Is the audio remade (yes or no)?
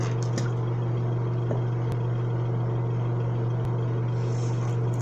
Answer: no